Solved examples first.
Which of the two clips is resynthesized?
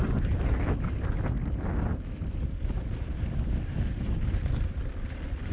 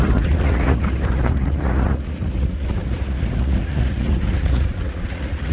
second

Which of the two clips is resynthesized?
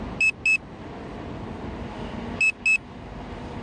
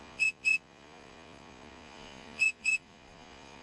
second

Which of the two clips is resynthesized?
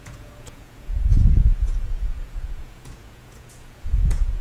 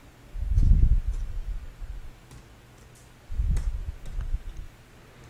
first